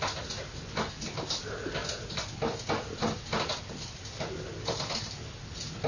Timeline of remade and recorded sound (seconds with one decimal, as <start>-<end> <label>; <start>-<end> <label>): 0.0-5.9 recorded